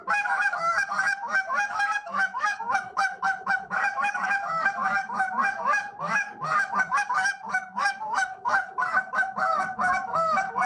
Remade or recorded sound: remade